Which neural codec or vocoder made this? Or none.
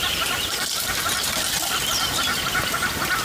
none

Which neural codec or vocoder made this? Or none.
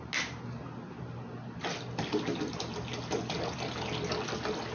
none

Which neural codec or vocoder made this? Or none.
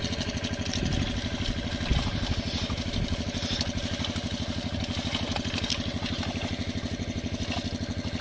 none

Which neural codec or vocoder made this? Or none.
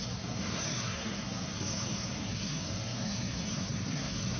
codec, SNAC